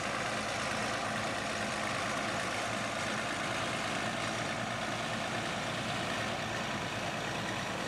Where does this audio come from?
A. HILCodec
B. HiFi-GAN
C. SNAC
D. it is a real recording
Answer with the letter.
D